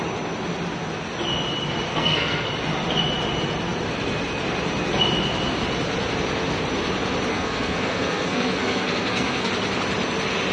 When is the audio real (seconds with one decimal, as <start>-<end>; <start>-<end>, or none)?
0.0-1.9; 2.5-7.3; 9.5-10.5

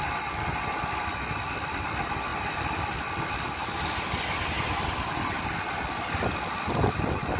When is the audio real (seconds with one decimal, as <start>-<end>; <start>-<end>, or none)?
0.0-7.4

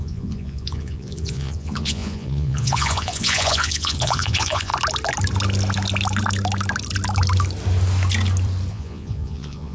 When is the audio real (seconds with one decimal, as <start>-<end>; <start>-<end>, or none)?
4.7-8.7

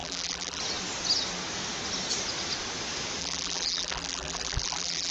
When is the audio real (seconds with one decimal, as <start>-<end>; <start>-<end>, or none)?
0.6-3.2

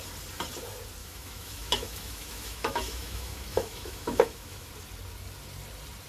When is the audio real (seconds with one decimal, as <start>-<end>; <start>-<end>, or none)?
0.0-1.0; 4.7-6.1

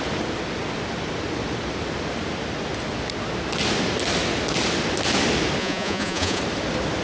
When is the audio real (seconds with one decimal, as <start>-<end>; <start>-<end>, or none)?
0.0-5.6; 6.4-7.0

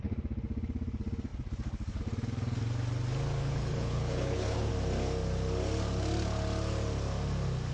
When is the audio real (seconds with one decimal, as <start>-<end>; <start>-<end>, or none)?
0.0-3.4; 4.7-7.7